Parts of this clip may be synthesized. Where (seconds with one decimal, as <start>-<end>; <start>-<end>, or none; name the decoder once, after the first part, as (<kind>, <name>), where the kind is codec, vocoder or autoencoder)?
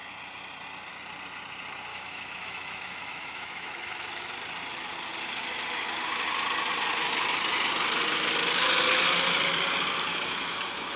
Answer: 1.9-4.3 (autoencoder, DAC-VAE); 10.1-11.0